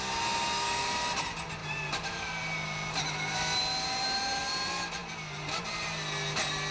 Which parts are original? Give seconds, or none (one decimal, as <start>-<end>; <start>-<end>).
0.0-1.6; 2.3-6.7